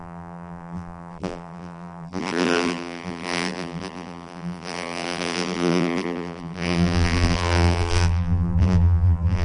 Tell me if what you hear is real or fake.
fake